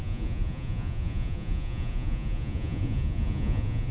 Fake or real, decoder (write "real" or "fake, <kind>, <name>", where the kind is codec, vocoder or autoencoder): fake, vocoder, Vocos